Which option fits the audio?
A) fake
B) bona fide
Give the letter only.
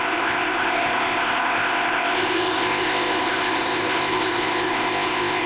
A